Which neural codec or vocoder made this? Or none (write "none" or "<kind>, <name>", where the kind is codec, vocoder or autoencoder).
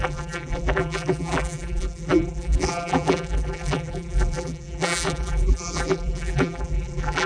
vocoder, BigVGAN v2